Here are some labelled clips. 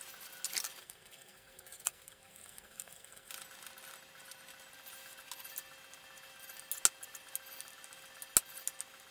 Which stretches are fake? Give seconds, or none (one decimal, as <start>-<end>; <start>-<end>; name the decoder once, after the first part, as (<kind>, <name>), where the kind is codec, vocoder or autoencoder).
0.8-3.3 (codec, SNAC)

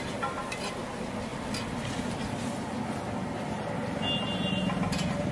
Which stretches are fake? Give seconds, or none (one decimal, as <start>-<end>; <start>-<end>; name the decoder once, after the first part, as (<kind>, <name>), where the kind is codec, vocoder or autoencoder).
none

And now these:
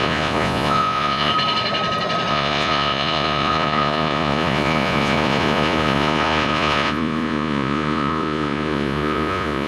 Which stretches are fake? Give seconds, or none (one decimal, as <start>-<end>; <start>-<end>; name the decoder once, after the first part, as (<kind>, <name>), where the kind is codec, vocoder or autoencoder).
0.0-1.3 (vocoder, Vocos); 2.3-9.7

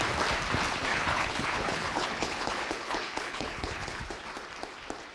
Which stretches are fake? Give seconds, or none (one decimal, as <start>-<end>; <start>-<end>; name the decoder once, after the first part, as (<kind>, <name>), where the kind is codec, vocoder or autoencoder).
0.9-4.0 (codec, HILCodec)